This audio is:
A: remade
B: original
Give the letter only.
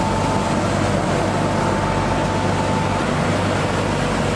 B